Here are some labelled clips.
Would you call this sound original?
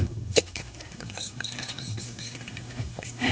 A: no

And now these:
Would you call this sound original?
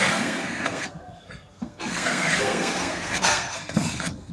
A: no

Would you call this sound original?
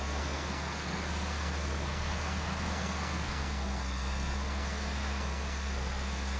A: no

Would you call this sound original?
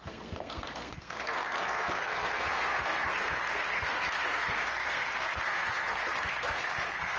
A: no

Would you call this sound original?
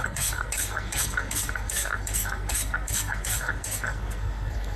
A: no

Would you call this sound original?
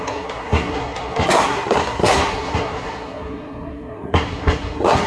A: no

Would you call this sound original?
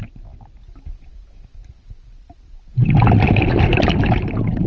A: yes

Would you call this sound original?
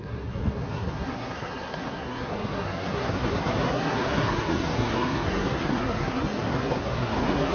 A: no